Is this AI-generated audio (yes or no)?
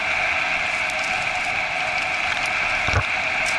no